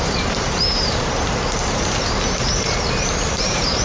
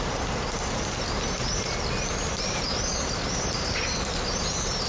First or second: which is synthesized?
first